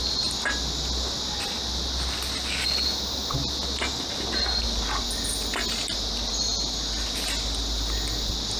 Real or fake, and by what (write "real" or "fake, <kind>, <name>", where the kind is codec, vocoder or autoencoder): real